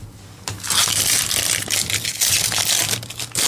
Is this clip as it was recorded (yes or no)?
yes